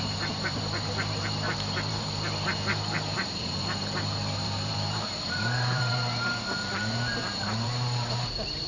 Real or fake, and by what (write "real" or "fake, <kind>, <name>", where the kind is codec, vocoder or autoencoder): fake, vocoder, BigVGAN v2